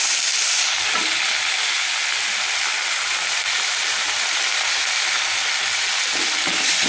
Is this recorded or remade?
recorded